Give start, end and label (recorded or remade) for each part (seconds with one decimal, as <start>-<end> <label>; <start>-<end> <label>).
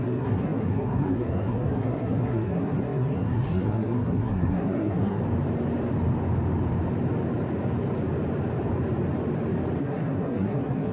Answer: 0.0-5.2 remade; 5.2-9.8 recorded; 9.8-10.9 remade